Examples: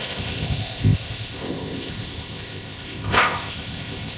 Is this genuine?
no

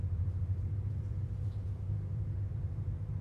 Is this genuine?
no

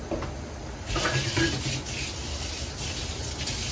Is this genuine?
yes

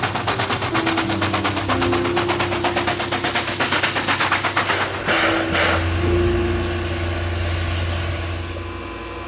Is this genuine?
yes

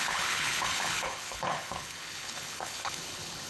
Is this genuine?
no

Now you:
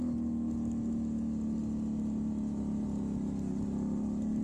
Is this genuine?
yes